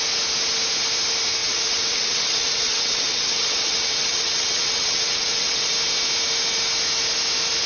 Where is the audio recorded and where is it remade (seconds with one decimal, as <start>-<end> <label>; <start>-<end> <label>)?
0.0-1.4 recorded; 1.4-5.7 remade; 5.7-7.7 recorded